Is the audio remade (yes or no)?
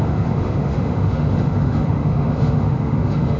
yes